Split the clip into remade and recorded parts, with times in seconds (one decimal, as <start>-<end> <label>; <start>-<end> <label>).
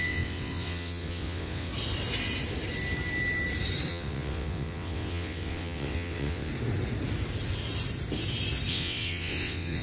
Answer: 0.0-1.7 remade; 1.7-3.9 recorded; 3.9-6.5 remade; 6.5-8.7 recorded; 8.7-9.8 remade